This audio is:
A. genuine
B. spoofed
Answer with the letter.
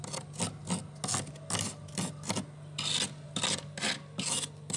A